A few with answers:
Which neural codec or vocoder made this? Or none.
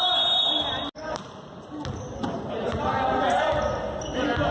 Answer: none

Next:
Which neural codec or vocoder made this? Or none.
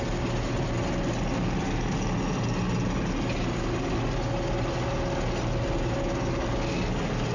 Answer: none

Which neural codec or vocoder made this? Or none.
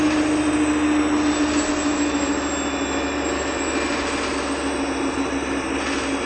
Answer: none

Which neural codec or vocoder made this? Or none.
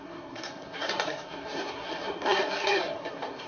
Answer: codec, SNAC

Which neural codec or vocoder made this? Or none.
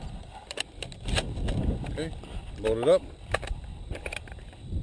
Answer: none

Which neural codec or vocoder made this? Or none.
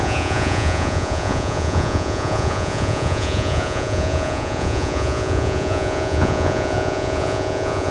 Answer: vocoder, Vocos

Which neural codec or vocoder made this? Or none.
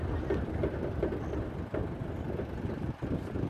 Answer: none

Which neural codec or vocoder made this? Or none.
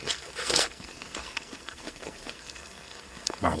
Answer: codec, SNAC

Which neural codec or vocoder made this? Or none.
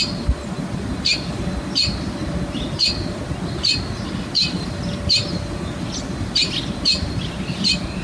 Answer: none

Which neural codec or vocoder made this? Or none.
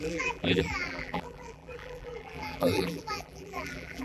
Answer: vocoder, BigVGAN v2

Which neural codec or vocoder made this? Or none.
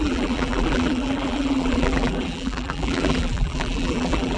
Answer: vocoder, BigVGAN v2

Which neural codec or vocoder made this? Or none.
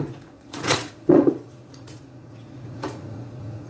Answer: vocoder, Vocos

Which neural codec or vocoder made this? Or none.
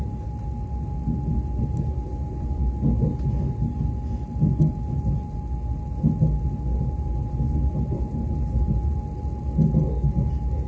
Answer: none